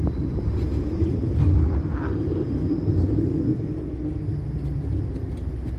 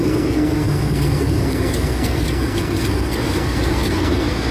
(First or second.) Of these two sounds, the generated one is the second